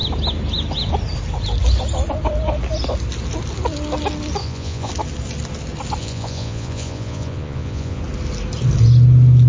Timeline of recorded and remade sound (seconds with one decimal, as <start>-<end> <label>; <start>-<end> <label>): 0.0-4.4 recorded; 4.4-4.9 remade; 4.9-6.0 recorded; 6.0-8.0 remade; 8.0-9.5 recorded